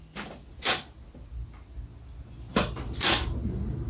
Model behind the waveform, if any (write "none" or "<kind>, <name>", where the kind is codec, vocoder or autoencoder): none